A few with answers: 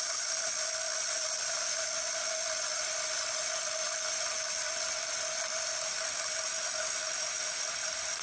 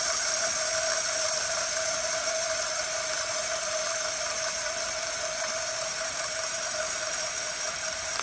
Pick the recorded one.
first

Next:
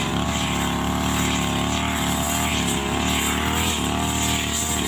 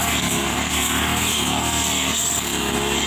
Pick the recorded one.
first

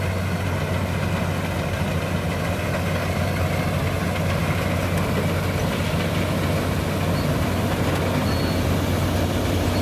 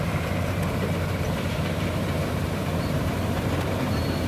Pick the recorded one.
first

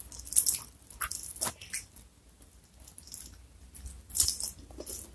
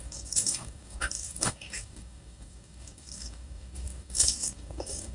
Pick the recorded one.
first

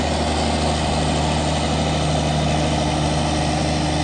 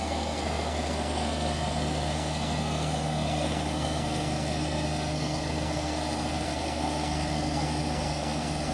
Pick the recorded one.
first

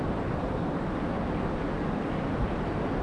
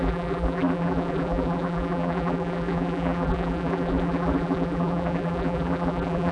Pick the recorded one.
first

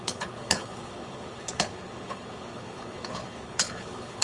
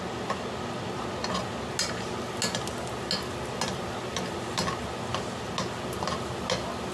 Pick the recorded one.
second